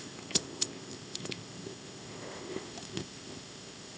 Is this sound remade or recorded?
remade